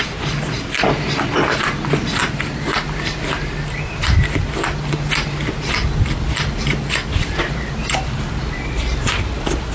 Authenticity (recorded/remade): recorded